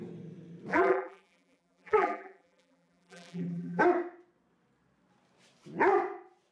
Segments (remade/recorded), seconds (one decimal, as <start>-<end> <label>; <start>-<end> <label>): 0.0-0.7 recorded; 0.7-3.8 remade; 3.8-6.5 recorded